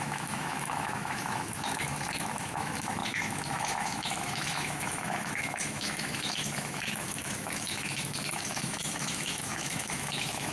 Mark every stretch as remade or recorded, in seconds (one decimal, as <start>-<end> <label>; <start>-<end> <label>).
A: 0.0-10.5 remade